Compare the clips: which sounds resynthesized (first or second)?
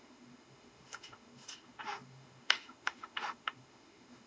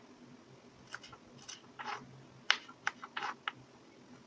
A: first